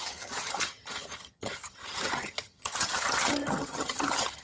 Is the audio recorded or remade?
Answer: remade